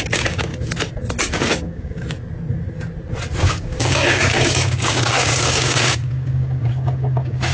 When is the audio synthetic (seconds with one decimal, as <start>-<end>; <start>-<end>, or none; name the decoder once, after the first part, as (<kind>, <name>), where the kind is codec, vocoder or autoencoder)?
0.0-0.5 (codec, DAC); 1.3-2.2; 3.4-7.5